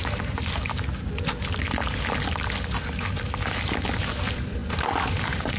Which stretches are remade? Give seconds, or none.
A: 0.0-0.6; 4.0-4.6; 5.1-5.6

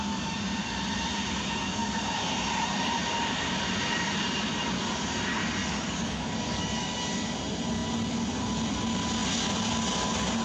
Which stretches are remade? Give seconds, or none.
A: 5.6-7.0

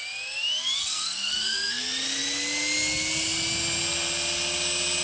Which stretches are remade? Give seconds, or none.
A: 0.8-1.8

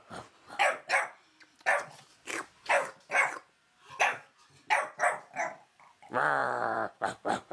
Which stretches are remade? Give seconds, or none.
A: 6.4-7.0

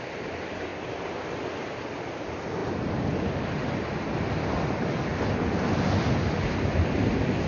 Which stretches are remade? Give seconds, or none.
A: none

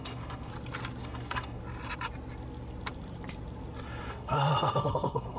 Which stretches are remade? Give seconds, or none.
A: 0.0-0.5; 1.0-1.6; 4.1-5.4

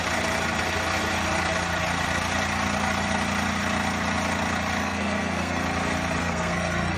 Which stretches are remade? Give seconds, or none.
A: 4.8-5.6; 6.2-7.0

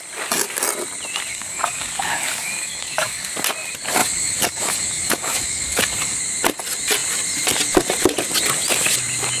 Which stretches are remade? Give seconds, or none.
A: 1.3-3.3; 4.0-6.2